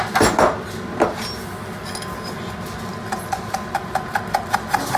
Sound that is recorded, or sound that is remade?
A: recorded